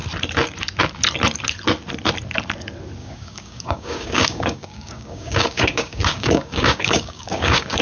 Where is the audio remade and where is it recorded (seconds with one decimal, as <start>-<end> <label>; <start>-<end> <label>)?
0.0-3.0 recorded; 3.0-7.8 remade